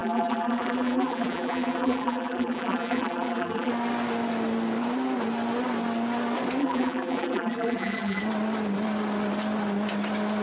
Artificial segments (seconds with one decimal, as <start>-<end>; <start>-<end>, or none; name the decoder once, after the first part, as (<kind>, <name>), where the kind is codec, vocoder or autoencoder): 0.0-3.7 (vocoder, BigVGAN v2); 6.6-8.2